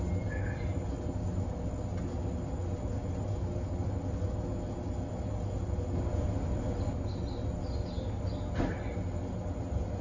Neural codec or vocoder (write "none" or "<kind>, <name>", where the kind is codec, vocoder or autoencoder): none